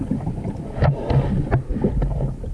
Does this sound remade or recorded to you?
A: recorded